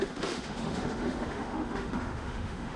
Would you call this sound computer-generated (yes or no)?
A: yes